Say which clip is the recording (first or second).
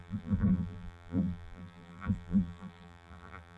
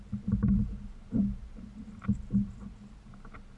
second